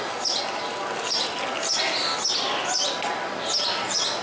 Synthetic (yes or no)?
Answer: no